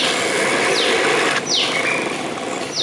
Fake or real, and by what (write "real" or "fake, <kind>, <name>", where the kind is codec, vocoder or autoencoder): real